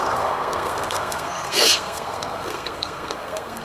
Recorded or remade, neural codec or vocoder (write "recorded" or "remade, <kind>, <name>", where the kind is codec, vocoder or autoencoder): remade, codec, SNAC